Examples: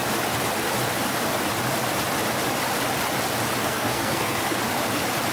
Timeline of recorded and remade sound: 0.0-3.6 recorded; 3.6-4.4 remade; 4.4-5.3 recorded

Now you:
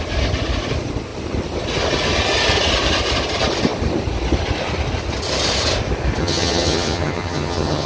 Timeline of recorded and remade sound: 0.0-6.2 recorded; 6.2-7.9 remade

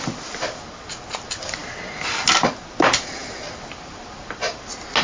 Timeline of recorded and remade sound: 0.0-5.0 recorded

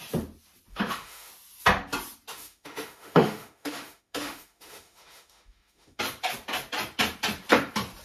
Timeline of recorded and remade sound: 0.0-0.7 recorded; 0.7-1.3 remade; 1.3-2.3 recorded; 2.3-6.0 remade; 6.0-8.0 recorded

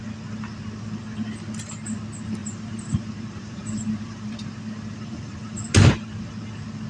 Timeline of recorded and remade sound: 0.0-2.4 recorded; 2.4-5.7 remade; 5.7-6.9 recorded

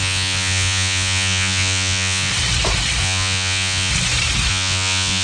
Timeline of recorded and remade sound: 0.0-2.3 remade; 2.3-3.0 recorded; 3.0-3.9 remade; 3.9-4.5 recorded; 4.5-5.2 remade

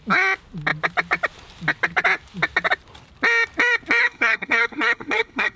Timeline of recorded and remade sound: 0.0-4.0 recorded; 4.0-5.6 remade